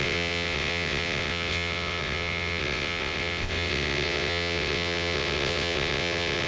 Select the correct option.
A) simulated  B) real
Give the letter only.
A